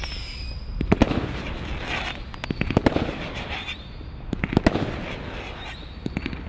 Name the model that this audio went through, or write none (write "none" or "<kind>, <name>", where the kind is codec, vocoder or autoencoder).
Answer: none